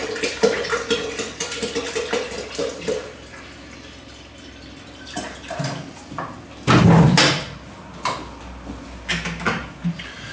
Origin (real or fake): real